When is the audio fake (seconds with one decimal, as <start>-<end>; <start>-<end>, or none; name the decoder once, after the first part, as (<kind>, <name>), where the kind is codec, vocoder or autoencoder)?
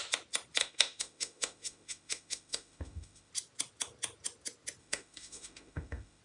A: 0.6-3.3 (autoencoder, DAC-VAE); 4.8-6.2